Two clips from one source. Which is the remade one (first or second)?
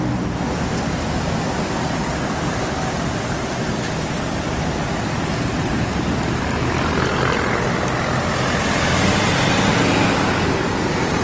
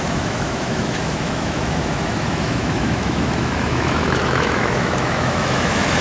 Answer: second